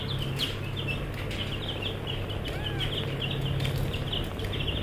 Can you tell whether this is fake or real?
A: real